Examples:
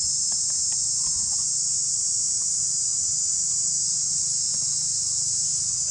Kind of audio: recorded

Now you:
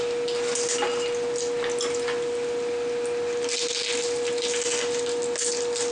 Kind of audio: recorded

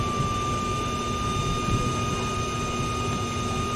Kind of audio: recorded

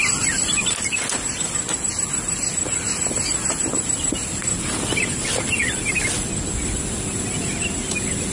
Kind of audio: recorded